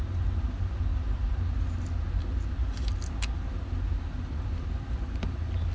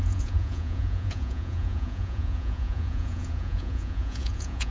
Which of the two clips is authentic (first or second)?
first